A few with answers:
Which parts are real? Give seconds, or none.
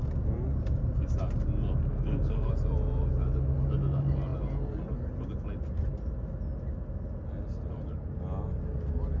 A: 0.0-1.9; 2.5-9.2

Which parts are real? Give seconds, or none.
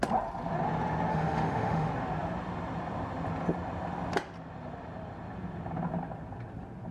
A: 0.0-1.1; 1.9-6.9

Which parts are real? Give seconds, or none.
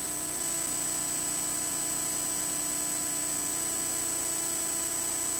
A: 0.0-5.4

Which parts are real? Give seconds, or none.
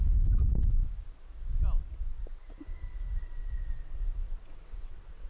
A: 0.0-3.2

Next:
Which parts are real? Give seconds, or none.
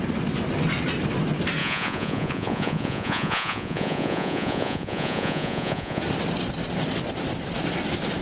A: 0.0-1.6; 6.0-8.2